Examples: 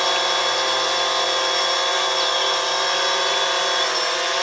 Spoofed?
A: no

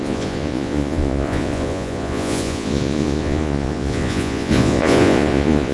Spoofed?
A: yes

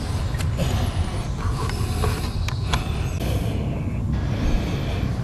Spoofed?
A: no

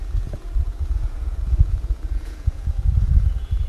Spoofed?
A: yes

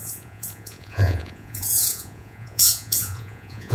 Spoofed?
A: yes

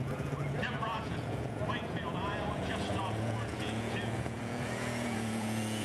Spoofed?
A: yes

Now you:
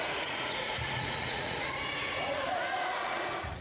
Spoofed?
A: yes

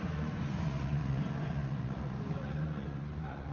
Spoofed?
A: yes